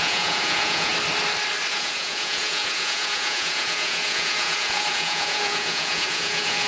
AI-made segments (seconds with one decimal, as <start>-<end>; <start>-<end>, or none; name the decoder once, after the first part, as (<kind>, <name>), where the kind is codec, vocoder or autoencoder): 0.0-0.9 (vocoder, Vocos); 1.7-6.7